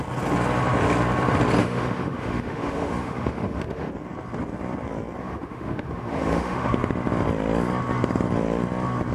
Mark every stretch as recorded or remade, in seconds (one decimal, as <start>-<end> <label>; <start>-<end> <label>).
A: 0.0-1.6 recorded; 1.6-3.9 remade; 3.9-5.2 recorded; 5.2-6.7 remade; 6.7-9.1 recorded

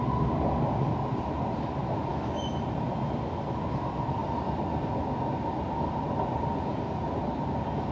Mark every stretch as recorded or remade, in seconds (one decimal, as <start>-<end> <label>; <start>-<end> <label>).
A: 0.0-2.1 recorded; 2.1-2.6 remade; 2.6-7.9 recorded

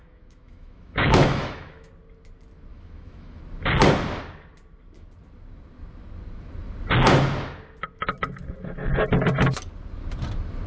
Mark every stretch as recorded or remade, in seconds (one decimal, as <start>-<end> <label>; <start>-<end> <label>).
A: 0.0-1.9 remade; 1.9-2.7 recorded; 2.7-3.4 remade; 3.4-10.7 recorded

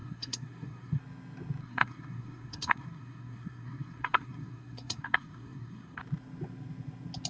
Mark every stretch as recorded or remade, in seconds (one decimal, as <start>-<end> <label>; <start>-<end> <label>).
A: 0.0-1.0 remade; 1.0-1.6 recorded; 1.6-6.0 remade; 6.0-7.3 recorded

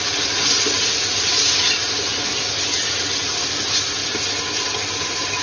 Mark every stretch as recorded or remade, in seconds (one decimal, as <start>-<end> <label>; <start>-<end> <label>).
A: 0.0-5.4 recorded

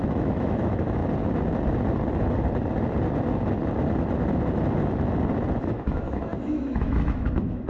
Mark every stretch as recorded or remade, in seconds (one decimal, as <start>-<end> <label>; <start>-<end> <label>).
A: 0.0-1.0 remade; 1.0-5.6 recorded; 5.6-7.7 remade

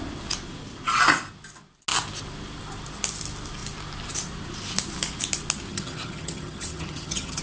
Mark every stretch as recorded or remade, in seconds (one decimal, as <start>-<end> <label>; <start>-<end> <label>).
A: 0.0-5.7 recorded; 5.7-7.4 remade

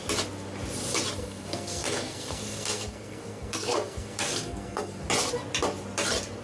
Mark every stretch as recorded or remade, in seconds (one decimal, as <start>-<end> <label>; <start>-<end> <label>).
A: 0.0-1.2 recorded; 1.2-5.0 remade; 5.0-6.4 recorded